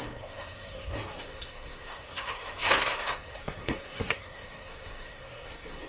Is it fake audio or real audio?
fake